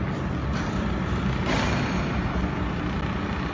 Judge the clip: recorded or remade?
recorded